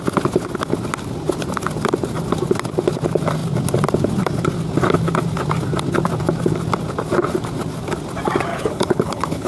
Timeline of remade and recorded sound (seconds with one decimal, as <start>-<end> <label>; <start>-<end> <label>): 0.0-8.5 recorded; 8.5-9.5 remade